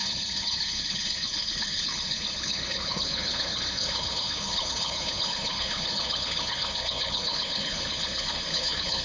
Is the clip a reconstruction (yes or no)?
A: yes